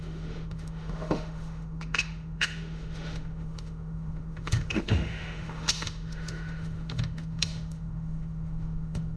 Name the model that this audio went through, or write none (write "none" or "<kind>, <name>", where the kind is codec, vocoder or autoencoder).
autoencoder, DAC-VAE